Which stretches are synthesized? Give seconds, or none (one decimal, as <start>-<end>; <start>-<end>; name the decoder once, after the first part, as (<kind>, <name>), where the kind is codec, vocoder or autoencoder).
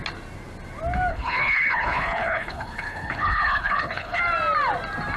1.1-4.2 (codec, HILCodec)